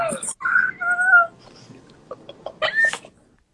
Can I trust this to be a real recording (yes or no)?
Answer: yes